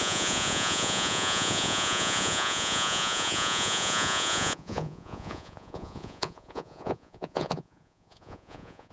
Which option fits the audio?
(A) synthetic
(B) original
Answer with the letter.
A